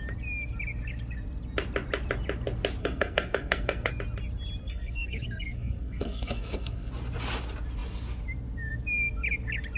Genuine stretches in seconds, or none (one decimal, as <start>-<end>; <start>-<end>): 0.0-2.8; 3.9-4.6; 6.9-9.8